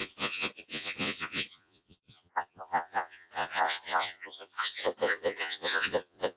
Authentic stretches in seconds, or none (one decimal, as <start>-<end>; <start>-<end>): none